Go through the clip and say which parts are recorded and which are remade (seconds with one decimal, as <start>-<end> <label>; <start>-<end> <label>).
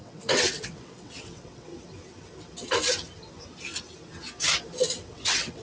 0.0-1.7 remade; 1.7-5.1 recorded; 5.1-5.6 remade